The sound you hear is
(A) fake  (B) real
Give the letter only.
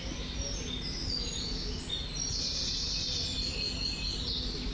B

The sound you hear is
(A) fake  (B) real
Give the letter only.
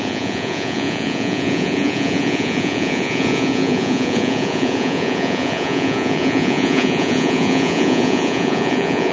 A